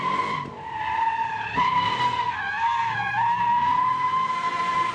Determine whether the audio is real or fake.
real